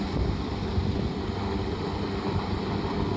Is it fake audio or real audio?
real